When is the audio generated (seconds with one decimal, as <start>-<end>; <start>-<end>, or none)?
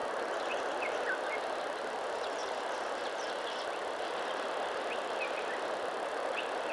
2.0-6.7